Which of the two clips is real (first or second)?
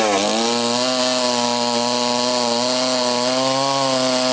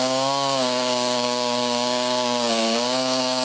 first